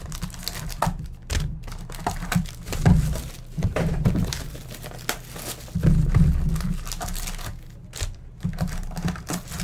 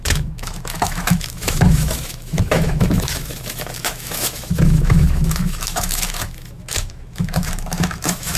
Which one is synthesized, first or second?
second